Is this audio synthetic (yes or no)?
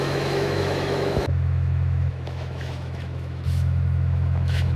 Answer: yes